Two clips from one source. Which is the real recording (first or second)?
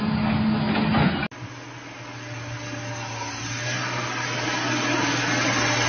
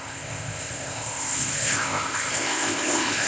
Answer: first